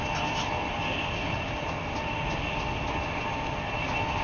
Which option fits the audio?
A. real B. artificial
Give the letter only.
A